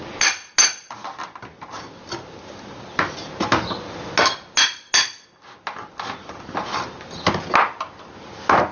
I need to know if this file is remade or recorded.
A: recorded